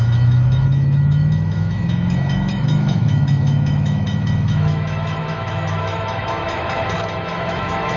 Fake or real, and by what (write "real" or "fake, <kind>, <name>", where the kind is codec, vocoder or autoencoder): fake, autoencoder, DAC-VAE